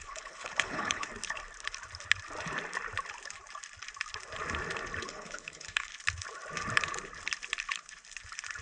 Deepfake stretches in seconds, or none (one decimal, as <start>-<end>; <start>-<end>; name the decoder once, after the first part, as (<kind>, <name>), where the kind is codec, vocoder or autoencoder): 0.0-1.1 (codec, HILCodec); 5.0-5.9